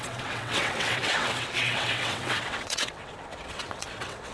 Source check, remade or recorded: remade